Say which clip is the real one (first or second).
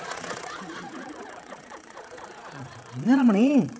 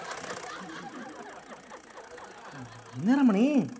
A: second